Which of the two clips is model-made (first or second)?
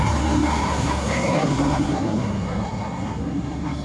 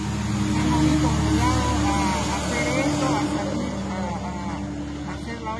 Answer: first